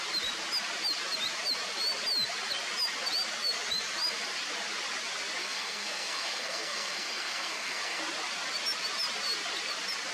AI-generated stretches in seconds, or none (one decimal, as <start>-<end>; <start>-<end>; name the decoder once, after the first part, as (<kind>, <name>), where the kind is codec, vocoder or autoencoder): 5.4-8.0 (codec, SNAC)